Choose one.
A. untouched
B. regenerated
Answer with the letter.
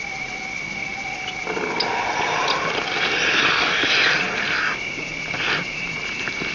A